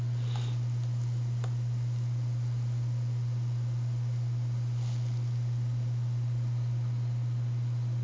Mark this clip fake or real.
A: real